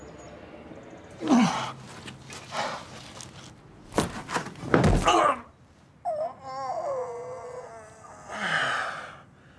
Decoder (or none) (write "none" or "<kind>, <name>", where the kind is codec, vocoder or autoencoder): none